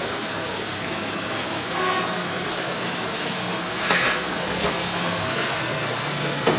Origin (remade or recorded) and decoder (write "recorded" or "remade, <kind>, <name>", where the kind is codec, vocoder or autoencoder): remade, codec, SNAC